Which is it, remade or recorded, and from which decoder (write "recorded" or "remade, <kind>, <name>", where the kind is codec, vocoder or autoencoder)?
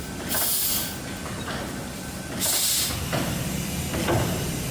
recorded